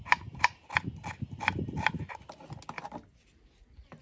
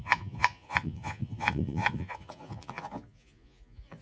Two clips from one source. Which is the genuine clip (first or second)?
first